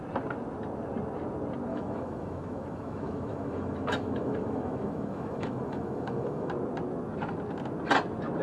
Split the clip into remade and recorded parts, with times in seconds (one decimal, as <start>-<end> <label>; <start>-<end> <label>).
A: 0.0-1.7 recorded; 1.7-6.5 remade; 6.5-8.4 recorded